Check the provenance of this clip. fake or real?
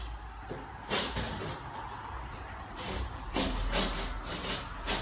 real